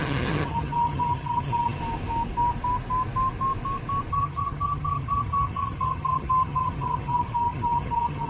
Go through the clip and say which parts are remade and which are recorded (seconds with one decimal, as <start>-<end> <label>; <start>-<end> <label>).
0.0-1.8 remade; 1.8-4.1 recorded; 4.1-8.3 remade